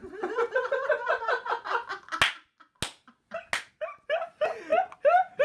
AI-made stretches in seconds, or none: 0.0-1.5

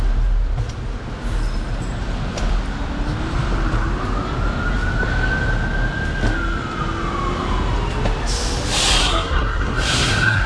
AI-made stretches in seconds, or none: 9.0-10.5

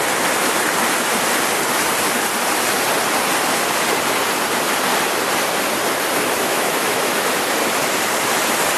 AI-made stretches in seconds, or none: 6.4-7.4

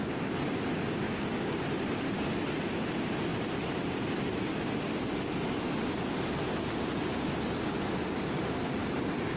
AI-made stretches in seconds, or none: 8.8-9.4